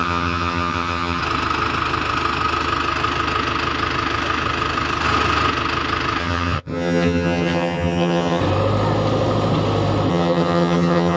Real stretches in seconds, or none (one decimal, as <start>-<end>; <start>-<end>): 1.2-6.2; 8.4-10.1